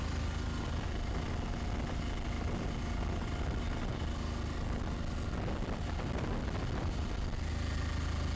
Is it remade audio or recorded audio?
recorded